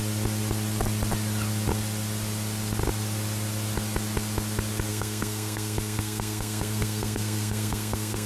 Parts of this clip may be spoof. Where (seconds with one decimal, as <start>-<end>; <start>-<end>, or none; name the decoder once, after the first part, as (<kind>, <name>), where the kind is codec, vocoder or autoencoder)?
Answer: 4.9-8.3 (codec, SNAC)